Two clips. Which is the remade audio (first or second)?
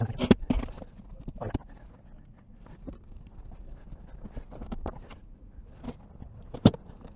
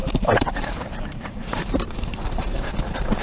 second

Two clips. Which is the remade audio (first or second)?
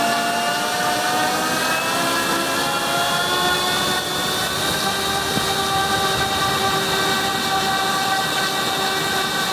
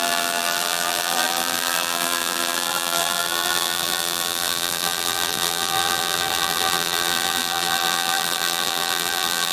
second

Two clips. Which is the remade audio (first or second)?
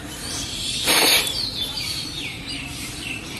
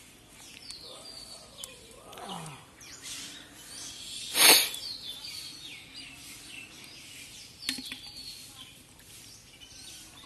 first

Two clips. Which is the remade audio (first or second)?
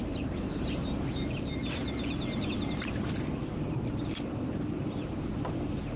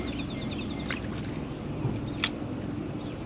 first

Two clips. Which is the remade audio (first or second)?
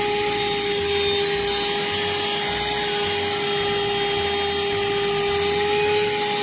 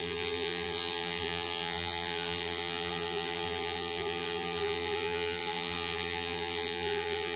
second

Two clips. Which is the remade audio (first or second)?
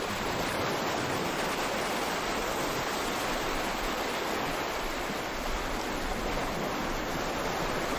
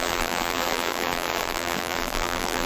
second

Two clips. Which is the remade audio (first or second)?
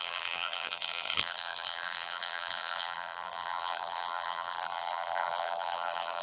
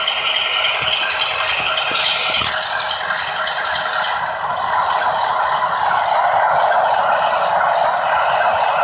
first